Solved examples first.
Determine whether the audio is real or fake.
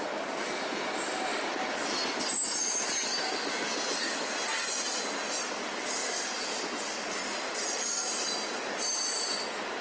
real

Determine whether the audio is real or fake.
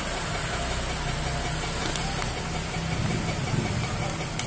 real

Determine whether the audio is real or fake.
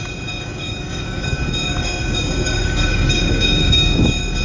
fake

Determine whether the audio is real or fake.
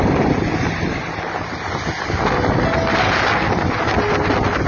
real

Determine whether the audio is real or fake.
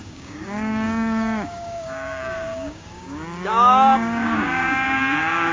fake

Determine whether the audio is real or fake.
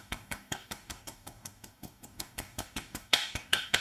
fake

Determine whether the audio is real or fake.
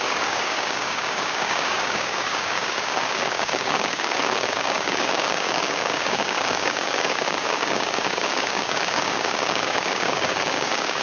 fake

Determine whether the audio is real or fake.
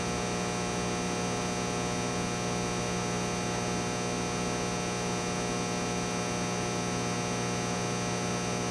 real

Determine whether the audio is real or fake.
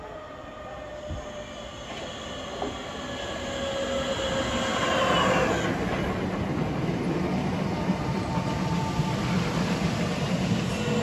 real